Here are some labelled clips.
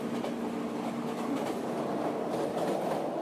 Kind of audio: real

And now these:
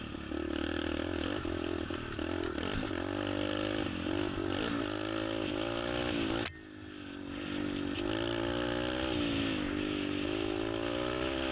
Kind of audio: real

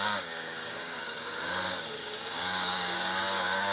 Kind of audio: fake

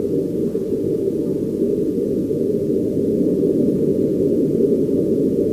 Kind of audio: real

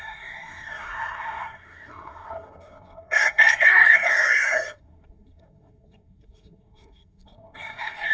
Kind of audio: fake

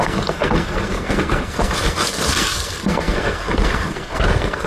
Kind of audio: fake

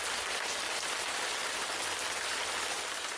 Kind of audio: real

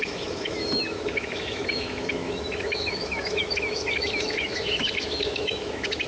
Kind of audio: fake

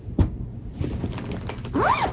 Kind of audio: real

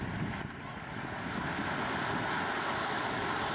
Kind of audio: real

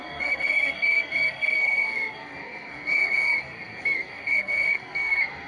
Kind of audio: fake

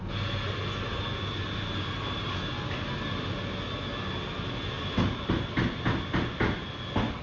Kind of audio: real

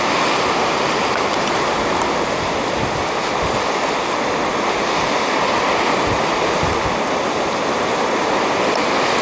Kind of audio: real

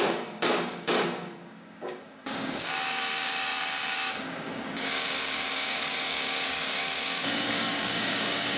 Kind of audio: fake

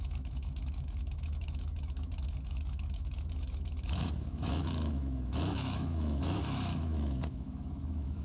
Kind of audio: fake